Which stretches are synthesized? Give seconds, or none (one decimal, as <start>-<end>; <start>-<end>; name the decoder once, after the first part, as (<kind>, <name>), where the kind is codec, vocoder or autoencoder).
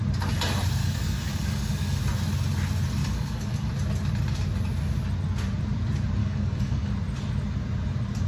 0.8-2.0 (codec, DAC); 3.0-3.7; 6.2-6.9